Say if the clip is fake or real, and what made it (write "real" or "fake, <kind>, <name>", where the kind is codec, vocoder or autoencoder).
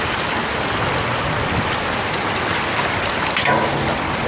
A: real